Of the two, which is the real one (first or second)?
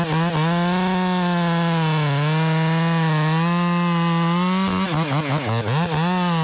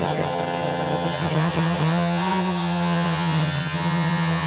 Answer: first